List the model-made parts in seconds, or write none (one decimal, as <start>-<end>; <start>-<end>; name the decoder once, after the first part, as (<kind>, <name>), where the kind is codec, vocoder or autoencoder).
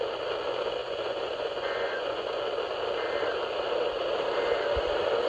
0.8-2.4 (vocoder, Vocos)